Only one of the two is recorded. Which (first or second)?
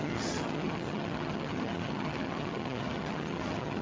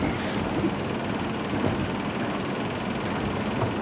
second